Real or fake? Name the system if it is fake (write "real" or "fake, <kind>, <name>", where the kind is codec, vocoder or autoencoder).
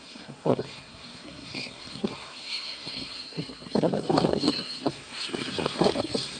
fake, codec, SNAC